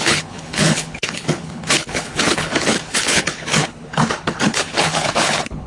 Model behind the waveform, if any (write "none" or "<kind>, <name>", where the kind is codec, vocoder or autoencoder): codec, HILCodec